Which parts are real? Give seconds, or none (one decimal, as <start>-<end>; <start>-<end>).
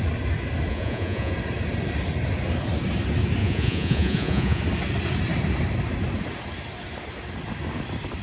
0.0-0.7; 1.3-3.4; 4.6-8.2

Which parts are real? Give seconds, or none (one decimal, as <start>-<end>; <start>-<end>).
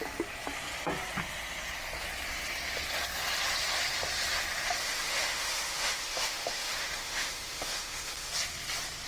0.0-4.8; 8.3-9.1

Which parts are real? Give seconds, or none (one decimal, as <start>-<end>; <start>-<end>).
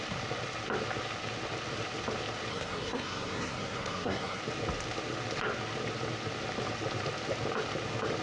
0.0-2.5; 4.4-8.2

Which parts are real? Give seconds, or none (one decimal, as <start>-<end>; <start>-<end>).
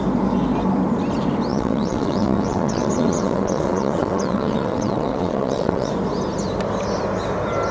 0.0-1.5; 5.9-7.7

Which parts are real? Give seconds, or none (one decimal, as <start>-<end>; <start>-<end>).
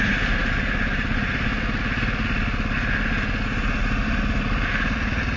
0.0-5.4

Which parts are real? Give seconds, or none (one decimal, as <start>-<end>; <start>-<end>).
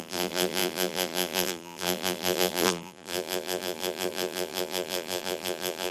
none